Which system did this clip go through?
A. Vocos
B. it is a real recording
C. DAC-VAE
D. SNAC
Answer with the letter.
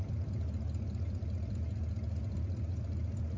B